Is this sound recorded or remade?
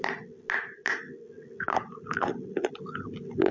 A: recorded